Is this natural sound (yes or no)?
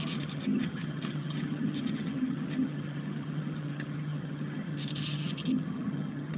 no